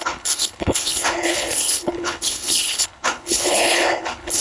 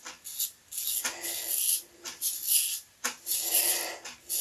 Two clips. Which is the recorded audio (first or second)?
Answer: second